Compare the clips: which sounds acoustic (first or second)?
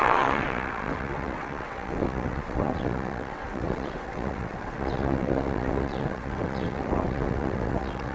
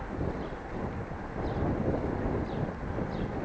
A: second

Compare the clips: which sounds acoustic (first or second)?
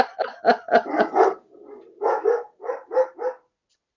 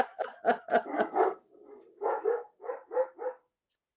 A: first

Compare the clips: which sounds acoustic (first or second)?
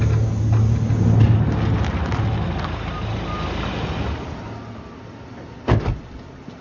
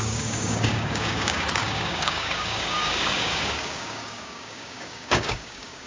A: first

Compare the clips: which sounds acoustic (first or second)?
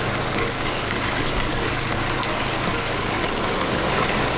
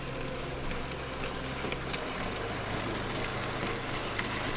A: second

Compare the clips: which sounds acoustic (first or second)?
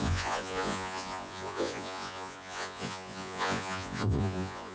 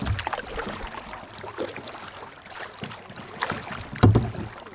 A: second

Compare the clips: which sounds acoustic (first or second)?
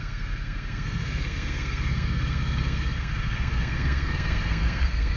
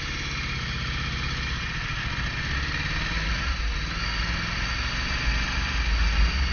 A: second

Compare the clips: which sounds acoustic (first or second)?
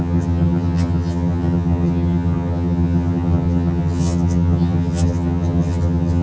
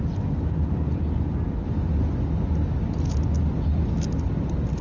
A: second